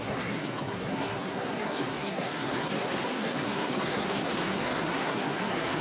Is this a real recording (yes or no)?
no